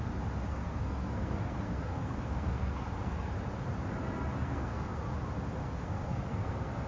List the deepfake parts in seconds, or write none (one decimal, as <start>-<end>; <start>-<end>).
0.5-3.3; 4.3-5.0; 5.6-6.9

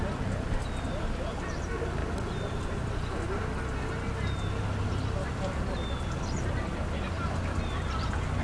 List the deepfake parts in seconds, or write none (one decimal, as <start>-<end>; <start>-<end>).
none

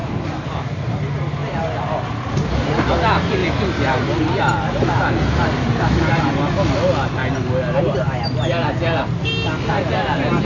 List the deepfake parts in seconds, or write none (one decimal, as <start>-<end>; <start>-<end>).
none

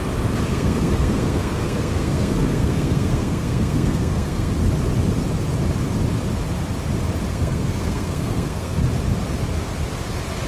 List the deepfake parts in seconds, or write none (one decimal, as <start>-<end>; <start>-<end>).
0.5-4.5; 7.3-8.8

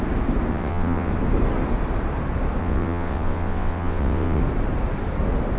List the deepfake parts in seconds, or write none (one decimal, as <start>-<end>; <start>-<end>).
0.5-1.1; 2.6-4.4

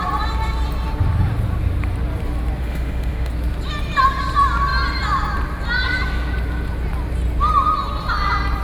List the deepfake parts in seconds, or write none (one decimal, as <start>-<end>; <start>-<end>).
2.6-3.3